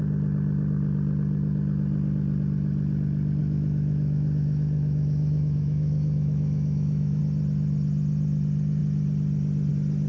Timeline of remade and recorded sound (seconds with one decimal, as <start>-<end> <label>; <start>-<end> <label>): 0.0-3.4 recorded; 3.4-7.2 remade; 7.2-10.1 recorded